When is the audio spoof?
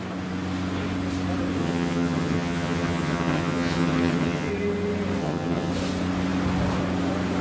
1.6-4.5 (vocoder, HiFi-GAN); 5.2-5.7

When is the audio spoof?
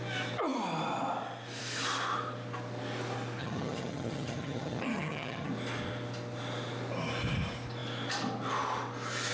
3.4-5.5 (vocoder, HiFi-GAN)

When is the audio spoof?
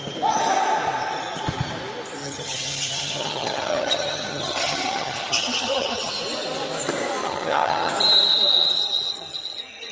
2.2-6.1 (vocoder, HiFi-GAN); 7.2-7.9; 8.8-9.9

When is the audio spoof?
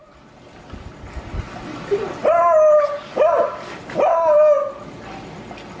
none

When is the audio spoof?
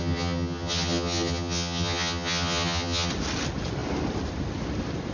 0.0-3.1 (vocoder, HiFi-GAN)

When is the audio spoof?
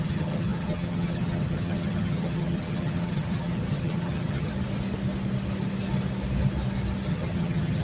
0.0-4.5 (vocoder, HiFi-GAN); 7.1-7.8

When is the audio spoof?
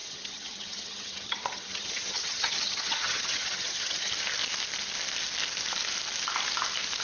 0.0-4.1 (vocoder, HiFi-GAN)